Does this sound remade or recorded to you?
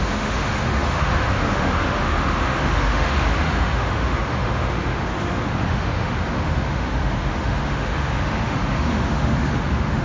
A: remade